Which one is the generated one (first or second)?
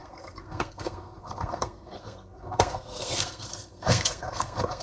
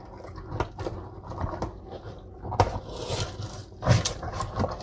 first